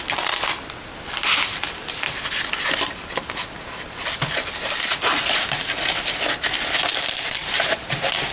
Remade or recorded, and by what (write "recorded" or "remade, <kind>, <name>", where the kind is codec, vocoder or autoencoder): recorded